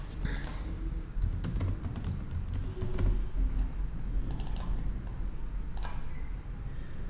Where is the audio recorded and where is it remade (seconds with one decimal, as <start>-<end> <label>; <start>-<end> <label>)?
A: 0.0-0.4 recorded; 0.4-1.6 remade; 1.6-7.1 recorded